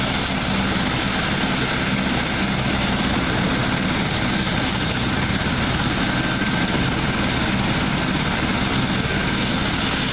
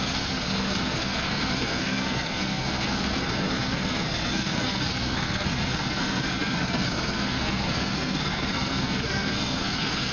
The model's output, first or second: second